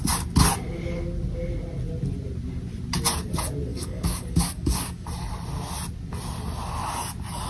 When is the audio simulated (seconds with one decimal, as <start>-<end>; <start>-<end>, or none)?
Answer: 3.7-5.1